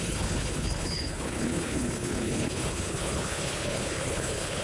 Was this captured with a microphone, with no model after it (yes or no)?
no